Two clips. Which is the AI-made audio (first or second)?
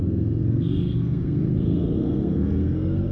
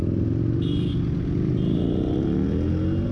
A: first